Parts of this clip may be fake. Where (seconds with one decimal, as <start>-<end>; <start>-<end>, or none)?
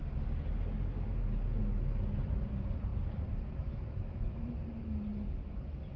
2.9-4.4